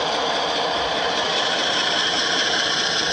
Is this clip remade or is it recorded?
remade